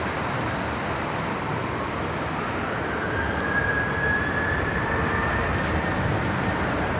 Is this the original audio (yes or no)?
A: no